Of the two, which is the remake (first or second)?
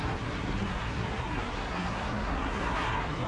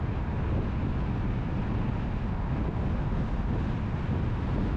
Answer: first